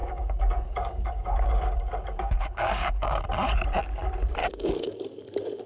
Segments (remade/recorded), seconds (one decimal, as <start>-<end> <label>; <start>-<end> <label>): 0.0-3.2 remade; 3.2-4.4 recorded; 4.4-5.0 remade; 5.0-5.7 recorded